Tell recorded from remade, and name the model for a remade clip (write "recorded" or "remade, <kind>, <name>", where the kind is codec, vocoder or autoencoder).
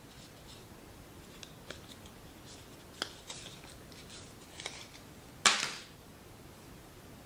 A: recorded